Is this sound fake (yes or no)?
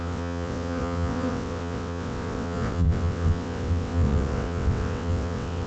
yes